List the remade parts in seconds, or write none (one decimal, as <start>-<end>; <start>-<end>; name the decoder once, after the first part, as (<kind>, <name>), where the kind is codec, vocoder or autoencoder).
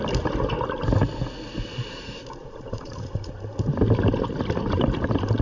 2.4-3.3 (vocoder, Vocos)